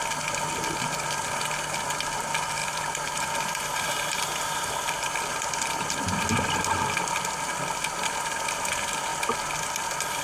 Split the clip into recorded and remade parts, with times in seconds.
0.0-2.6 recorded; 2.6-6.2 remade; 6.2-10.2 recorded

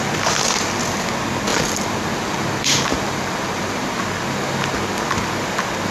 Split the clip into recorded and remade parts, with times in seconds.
0.0-1.5 recorded; 1.5-4.0 remade; 4.0-5.9 recorded